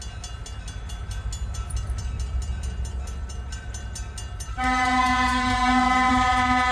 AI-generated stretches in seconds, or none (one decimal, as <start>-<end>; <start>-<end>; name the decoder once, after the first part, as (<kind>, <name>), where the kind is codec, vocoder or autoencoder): 4.5-6.1 (codec, SNAC)